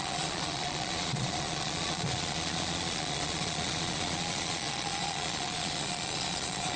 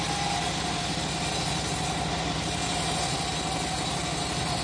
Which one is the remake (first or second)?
first